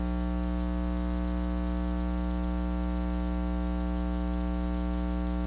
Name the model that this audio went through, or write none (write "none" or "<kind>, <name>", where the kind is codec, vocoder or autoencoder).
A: none